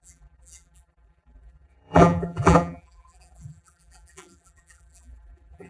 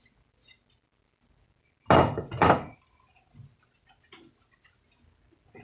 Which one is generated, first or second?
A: first